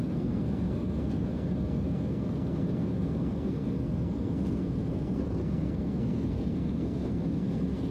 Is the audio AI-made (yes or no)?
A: yes